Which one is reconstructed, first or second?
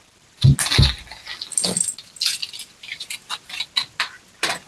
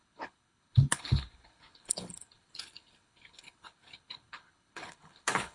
second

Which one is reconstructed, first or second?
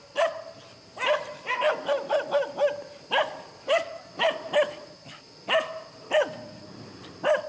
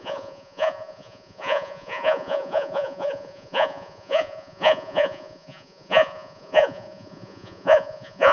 second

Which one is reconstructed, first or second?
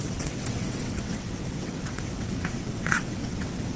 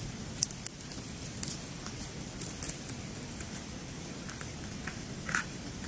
first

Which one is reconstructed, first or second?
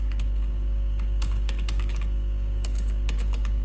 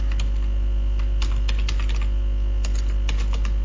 first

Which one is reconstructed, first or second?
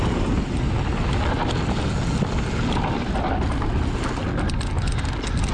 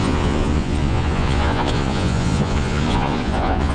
second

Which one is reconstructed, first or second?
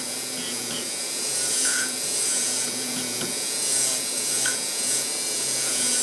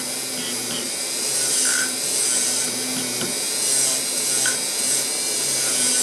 first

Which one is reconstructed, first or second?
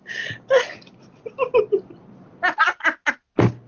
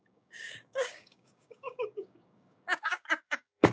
second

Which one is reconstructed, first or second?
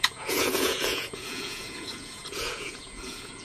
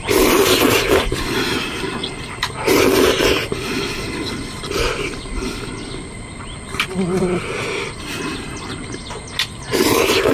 first